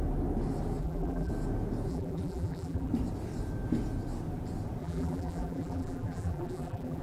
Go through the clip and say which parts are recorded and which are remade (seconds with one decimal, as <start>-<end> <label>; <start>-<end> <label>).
0.0-0.8 recorded; 0.8-1.3 remade; 1.3-1.9 recorded; 1.9-2.9 remade; 2.9-4.8 recorded; 4.8-7.0 remade